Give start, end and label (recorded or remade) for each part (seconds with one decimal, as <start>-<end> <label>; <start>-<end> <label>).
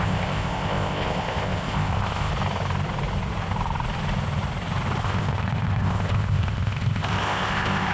0.0-2.3 remade; 2.3-5.0 recorded; 5.0-7.9 remade